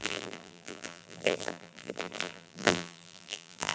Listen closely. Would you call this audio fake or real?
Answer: fake